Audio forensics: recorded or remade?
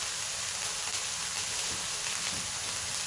recorded